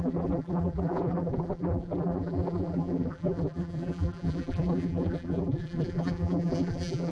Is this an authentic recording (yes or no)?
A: no